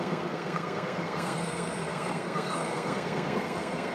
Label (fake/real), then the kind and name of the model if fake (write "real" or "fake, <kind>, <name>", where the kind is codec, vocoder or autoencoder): fake, codec, SNAC